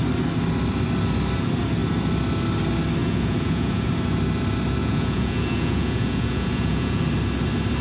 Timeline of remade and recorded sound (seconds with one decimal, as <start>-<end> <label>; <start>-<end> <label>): 0.0-3.0 recorded; 3.0-3.9 remade; 3.9-4.8 recorded; 4.8-7.0 remade; 7.0-7.8 recorded